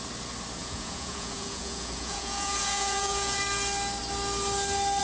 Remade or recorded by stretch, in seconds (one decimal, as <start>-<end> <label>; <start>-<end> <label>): 0.0-0.6 recorded; 0.6-3.4 remade; 3.4-5.0 recorded